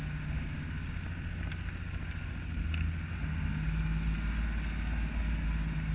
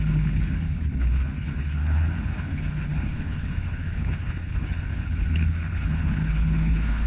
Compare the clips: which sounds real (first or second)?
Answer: first